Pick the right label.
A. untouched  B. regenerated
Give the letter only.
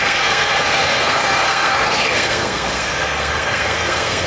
B